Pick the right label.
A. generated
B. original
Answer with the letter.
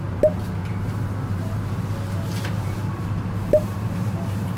A